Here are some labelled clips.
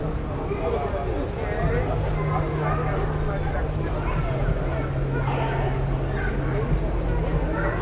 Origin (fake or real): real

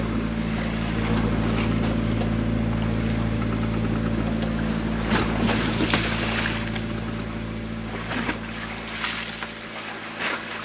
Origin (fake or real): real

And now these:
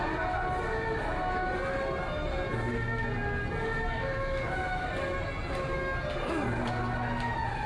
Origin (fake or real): real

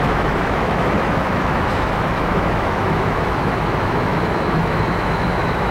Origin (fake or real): fake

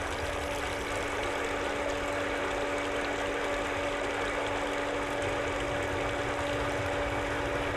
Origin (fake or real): real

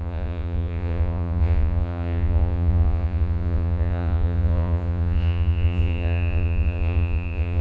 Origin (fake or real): fake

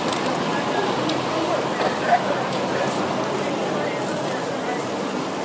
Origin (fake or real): real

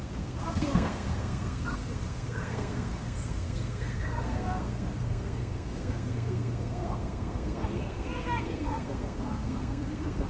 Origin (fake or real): fake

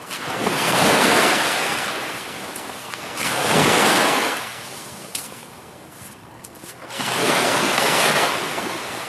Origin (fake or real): fake